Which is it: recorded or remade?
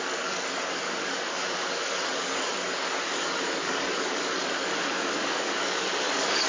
remade